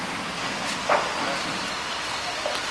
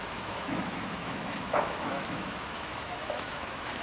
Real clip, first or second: first